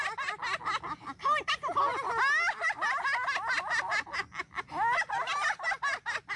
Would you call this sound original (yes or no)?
yes